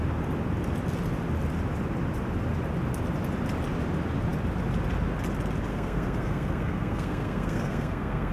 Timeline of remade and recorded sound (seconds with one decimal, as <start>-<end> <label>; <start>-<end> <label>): 0.0-5.7 recorded; 5.7-8.3 remade